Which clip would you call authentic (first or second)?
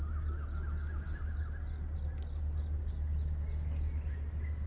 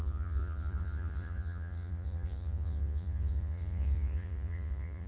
first